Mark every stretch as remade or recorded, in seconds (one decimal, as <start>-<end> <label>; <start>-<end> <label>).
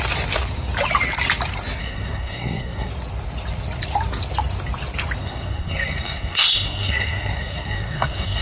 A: 0.0-1.8 recorded; 1.8-2.9 remade; 2.9-5.2 recorded; 5.2-8.4 remade